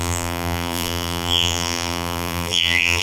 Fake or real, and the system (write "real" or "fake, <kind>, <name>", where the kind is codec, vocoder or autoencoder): fake, vocoder, BigVGAN v2